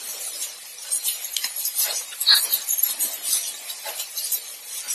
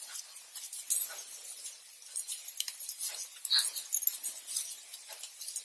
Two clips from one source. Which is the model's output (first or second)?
first